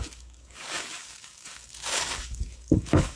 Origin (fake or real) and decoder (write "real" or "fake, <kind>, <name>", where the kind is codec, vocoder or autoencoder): fake, codec, DAC